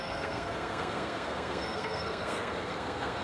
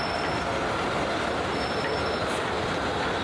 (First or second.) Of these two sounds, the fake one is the first